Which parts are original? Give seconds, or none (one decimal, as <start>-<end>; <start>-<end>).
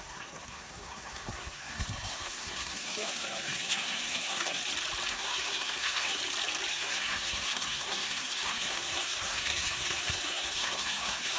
4.6-5.1; 6.2-6.7